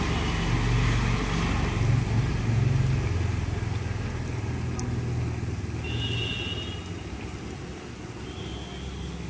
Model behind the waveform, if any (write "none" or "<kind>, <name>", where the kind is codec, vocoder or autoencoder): none